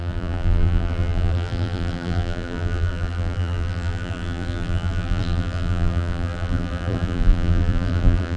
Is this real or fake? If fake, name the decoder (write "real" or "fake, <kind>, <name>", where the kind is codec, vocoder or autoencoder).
fake, vocoder, BigVGAN v2